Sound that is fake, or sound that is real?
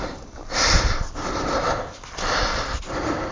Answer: fake